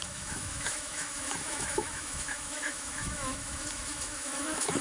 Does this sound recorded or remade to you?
remade